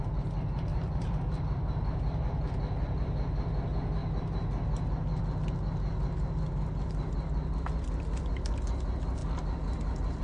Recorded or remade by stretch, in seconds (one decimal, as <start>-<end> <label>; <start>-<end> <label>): 0.0-0.7 recorded; 0.7-1.4 remade; 1.4-10.2 recorded